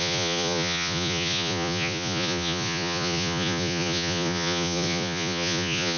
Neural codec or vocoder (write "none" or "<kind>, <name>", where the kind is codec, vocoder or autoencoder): vocoder, Vocos